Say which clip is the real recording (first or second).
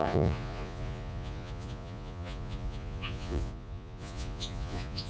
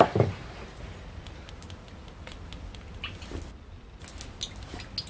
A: second